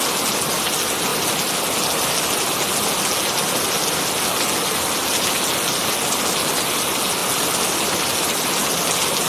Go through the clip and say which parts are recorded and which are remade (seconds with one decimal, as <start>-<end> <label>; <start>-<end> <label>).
0.0-9.3 recorded